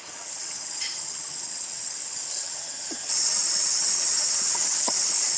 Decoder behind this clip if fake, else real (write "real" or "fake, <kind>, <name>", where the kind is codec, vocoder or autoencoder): fake, vocoder, HiFi-GAN